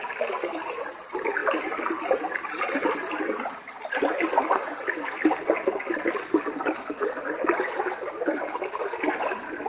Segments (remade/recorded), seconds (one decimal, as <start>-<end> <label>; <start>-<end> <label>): 0.0-9.7 recorded